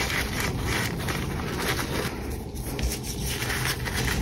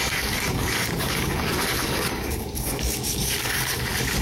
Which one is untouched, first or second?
first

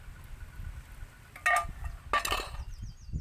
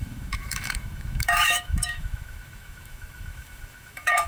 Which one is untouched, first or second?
first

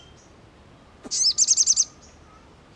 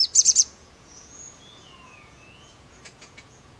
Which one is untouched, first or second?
first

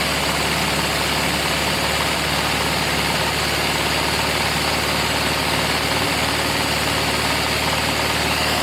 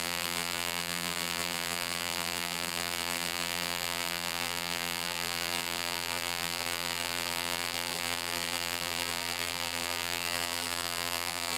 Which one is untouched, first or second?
first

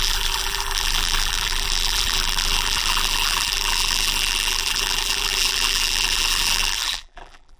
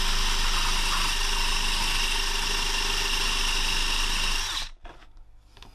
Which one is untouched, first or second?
second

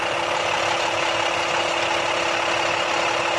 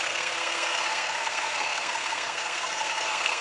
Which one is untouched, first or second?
first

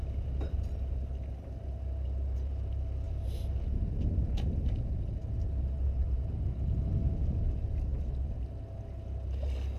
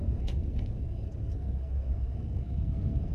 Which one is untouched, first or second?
first